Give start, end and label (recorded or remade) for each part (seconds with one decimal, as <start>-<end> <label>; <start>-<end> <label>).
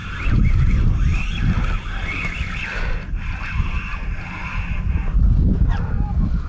0.0-6.5 recorded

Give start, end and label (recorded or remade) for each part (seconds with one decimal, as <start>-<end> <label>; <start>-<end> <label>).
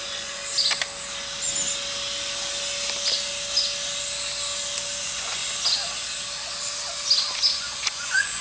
0.0-0.4 remade; 0.4-5.0 recorded; 5.0-5.4 remade; 5.4-7.5 recorded; 7.5-8.4 remade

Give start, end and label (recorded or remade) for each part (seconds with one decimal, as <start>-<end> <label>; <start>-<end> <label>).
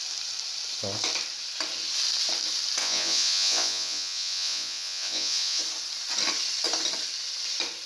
0.0-2.8 recorded; 2.8-5.6 remade; 5.6-7.9 recorded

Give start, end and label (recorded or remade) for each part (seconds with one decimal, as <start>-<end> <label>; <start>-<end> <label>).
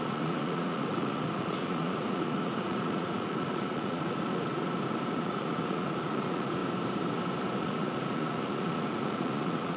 0.0-4.5 remade; 4.5-5.1 recorded; 5.1-6.6 remade; 6.6-7.6 recorded; 7.6-9.8 remade